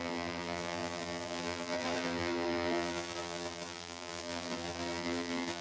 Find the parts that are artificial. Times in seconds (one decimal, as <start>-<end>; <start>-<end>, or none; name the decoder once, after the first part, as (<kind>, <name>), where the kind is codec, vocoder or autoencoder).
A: 0.0-5.6 (vocoder, BigVGAN v2)